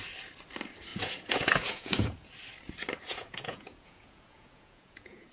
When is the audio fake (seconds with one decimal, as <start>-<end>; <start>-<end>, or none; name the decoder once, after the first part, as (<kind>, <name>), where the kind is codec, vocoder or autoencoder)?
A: 0.9-2.3 (vocoder, Vocos); 3.1-5.3